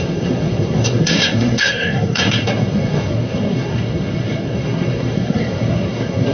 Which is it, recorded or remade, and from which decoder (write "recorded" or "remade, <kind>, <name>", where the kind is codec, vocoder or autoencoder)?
remade, codec, SNAC